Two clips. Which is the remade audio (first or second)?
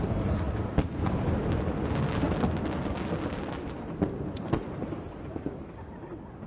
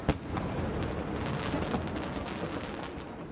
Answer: first